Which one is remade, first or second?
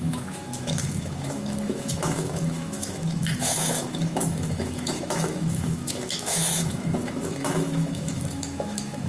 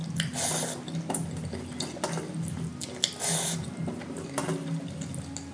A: first